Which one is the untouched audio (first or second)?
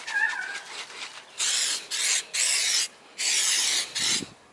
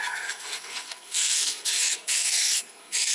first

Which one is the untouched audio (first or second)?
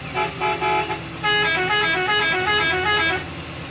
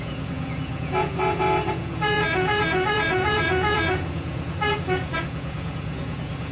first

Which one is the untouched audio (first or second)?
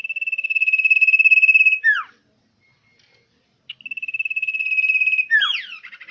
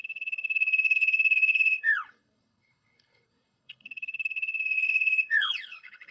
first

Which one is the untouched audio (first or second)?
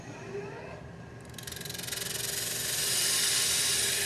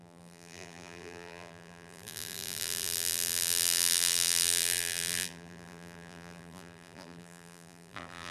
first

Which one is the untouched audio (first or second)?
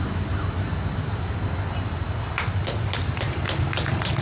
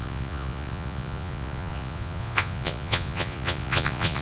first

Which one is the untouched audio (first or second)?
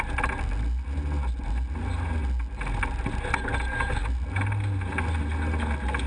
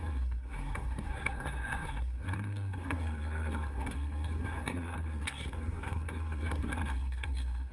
first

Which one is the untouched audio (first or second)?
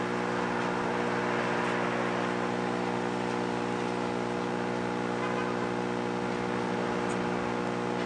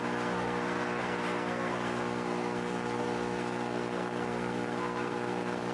first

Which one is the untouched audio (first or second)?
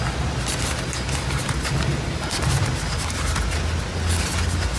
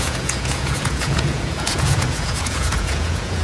first